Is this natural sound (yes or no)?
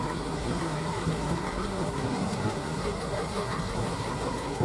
no